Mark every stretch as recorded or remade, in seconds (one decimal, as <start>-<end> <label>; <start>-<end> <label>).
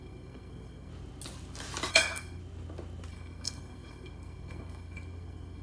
0.0-0.9 remade; 0.9-1.9 recorded; 1.9-2.4 remade; 2.4-3.1 recorded; 3.1-5.6 remade